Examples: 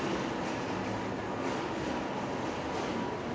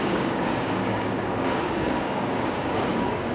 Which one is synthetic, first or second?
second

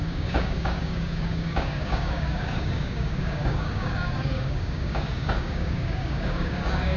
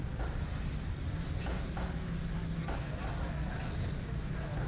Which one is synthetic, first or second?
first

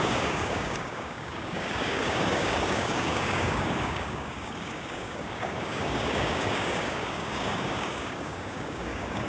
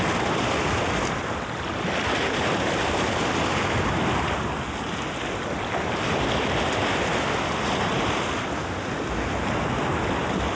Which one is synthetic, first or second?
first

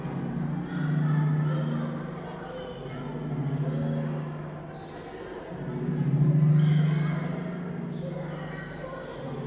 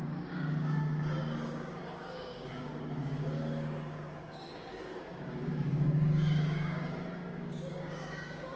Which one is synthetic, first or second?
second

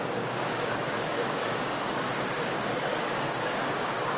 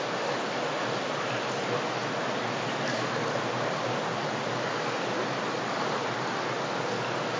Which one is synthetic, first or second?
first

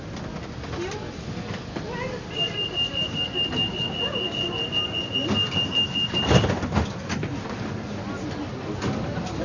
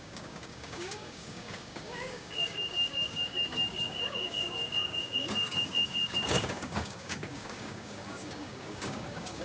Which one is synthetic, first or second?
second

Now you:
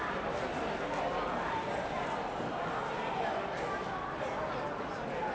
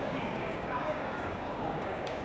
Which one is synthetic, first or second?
second